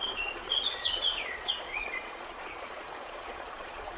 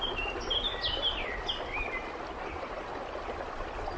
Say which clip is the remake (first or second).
first